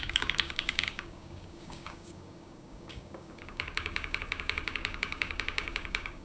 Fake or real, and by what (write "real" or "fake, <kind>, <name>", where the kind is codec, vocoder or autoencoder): fake, codec, DAC